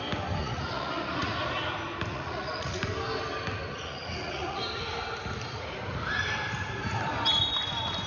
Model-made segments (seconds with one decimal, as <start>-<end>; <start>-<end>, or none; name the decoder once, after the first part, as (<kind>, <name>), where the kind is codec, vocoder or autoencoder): 0.4-1.3 (vocoder, Vocos); 2.1-2.8; 3.7-4.6